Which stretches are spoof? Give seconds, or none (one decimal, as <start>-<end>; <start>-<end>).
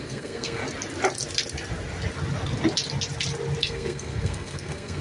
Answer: 0.0-0.6; 3.6-5.0